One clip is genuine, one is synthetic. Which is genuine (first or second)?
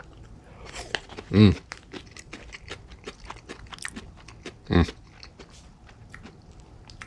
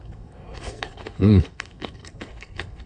first